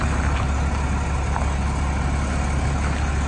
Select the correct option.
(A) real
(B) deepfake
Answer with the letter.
A